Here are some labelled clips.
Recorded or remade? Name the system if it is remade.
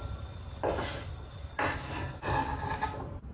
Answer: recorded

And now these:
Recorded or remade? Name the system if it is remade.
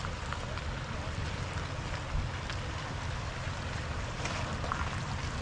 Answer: recorded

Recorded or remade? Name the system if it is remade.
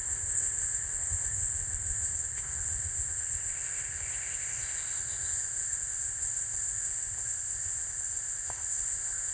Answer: remade, codec, ZipCodec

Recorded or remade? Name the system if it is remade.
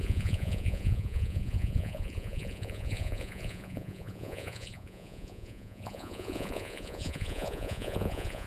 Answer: remade, vocoder, Vocos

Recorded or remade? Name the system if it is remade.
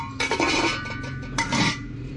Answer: remade, vocoder, BigVGAN v2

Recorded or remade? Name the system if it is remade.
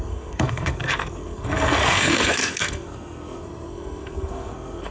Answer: remade, codec, SNAC